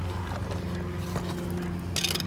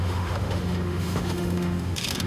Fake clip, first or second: second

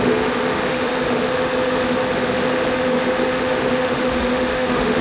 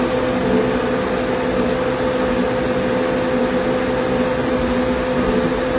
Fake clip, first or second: first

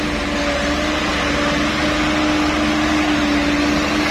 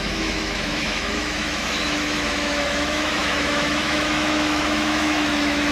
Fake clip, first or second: second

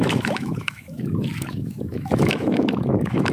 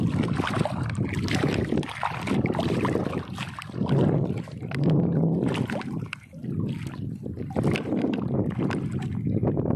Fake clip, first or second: first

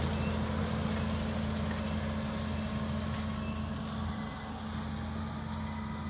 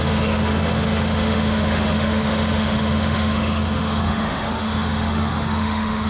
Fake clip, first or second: second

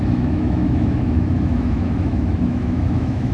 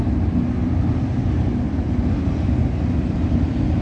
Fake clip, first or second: first